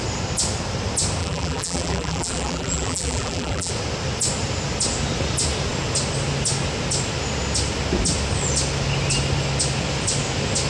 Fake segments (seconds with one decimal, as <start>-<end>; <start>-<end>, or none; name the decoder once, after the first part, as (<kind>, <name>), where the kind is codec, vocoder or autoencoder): 1.2-3.7 (vocoder, BigVGAN v2)